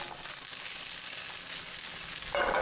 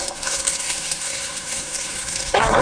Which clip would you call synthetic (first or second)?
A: second